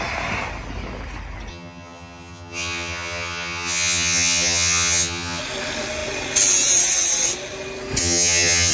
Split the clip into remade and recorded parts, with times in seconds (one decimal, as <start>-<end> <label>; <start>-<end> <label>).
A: 0.0-1.5 recorded; 1.5-5.4 remade; 5.4-8.0 recorded; 8.0-8.7 remade

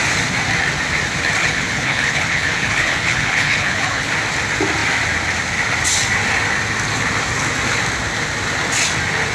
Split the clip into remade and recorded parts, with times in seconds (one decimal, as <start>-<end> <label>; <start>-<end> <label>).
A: 0.0-1.4 recorded; 1.4-4.1 remade; 4.1-9.3 recorded

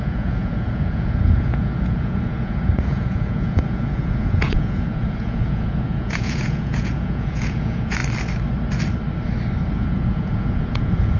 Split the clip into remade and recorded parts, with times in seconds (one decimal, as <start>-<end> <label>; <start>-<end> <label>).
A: 0.0-8.0 remade; 8.0-9.7 recorded; 9.7-11.2 remade

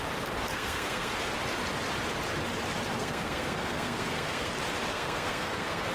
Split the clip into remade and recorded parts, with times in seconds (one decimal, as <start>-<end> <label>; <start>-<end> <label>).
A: 0.0-0.5 recorded; 0.5-1.1 remade; 1.1-2.9 recorded; 2.9-4.5 remade; 4.5-4.9 recorded; 4.9-5.9 remade

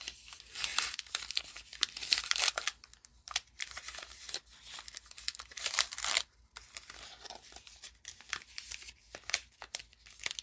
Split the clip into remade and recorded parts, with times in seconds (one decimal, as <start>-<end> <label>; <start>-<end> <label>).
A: 0.0-0.7 recorded; 0.7-1.4 remade; 1.4-3.1 recorded; 3.1-4.3 remade; 4.3-5.3 recorded; 5.3-9.8 remade; 9.8-10.4 recorded